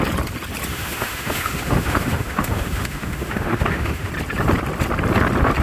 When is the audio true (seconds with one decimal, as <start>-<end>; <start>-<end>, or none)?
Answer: 0.0-0.7; 4.1-5.6

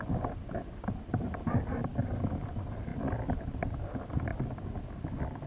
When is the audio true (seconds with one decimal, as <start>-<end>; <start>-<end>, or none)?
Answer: 0.0-5.5